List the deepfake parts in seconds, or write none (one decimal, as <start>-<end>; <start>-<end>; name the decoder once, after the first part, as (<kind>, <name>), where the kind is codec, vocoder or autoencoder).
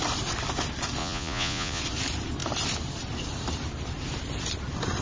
1.0-1.8 (vocoder, Vocos)